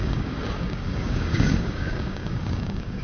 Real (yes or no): no